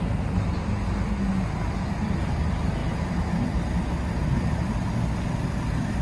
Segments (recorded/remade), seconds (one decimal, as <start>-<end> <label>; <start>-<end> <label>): 0.0-6.0 recorded